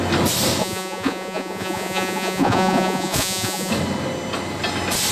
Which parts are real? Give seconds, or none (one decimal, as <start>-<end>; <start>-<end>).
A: 0.0-0.6; 3.7-5.1